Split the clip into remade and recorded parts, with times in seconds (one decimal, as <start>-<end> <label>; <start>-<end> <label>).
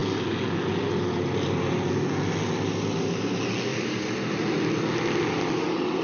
0.0-6.0 recorded